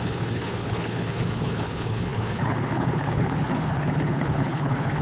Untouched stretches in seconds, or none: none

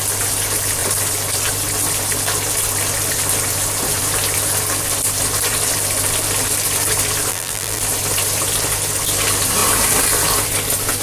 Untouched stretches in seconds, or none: 0.0-7.3; 7.8-11.0

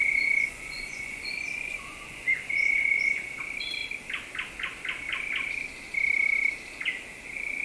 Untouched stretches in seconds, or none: 3.2-7.6

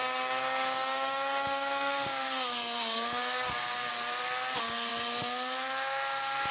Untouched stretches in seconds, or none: 3.9-6.5

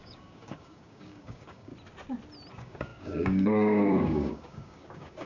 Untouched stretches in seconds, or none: 1.7-2.5